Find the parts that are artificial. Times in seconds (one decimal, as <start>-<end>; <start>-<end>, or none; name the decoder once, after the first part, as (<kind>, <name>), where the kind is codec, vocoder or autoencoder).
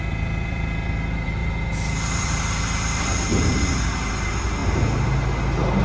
0.0-1.4 (vocoder, BigVGAN v2); 1.9-3.3; 3.8-4.6